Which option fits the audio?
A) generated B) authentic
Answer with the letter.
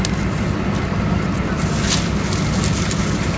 B